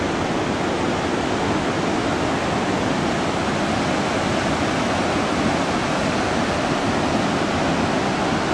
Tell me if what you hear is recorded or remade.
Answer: recorded